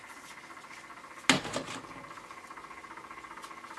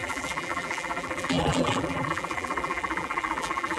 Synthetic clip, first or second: second